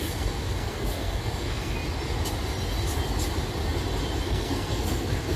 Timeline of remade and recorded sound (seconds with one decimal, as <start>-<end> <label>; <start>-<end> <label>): 0.0-1.8 remade; 1.8-4.2 recorded; 4.2-5.4 remade